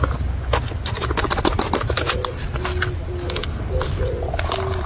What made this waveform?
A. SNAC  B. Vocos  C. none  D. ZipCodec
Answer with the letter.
C